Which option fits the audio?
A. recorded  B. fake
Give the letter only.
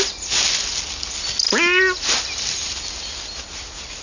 A